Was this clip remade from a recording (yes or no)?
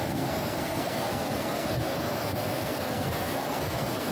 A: yes